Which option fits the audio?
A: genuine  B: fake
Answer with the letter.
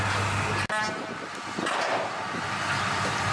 A